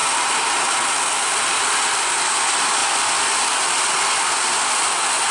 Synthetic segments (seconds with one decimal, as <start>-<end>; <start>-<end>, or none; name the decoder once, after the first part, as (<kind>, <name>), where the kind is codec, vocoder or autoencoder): none